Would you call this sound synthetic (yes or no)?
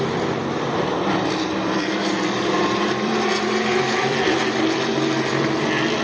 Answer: yes